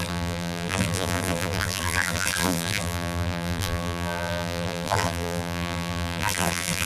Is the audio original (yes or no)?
no